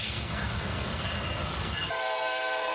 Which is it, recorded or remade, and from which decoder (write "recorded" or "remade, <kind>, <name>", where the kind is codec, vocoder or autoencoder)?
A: remade, codec, SNAC